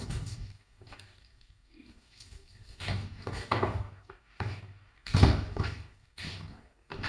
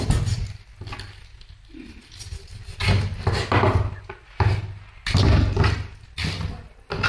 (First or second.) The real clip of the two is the second